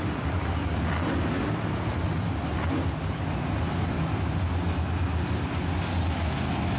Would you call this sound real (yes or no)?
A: yes